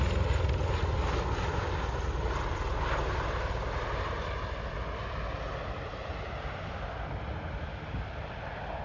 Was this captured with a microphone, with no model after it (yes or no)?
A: yes